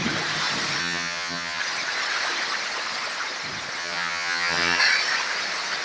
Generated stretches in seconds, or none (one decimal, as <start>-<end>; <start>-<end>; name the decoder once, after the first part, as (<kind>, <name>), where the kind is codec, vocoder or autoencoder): 0.8-1.6 (vocoder, HiFi-GAN); 3.8-4.8